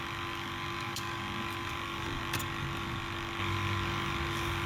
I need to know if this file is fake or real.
fake